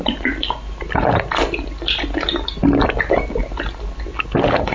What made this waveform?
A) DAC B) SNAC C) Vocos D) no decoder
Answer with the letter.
D